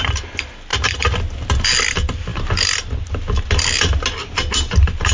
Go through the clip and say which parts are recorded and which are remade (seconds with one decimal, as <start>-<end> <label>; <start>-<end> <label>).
0.0-5.1 recorded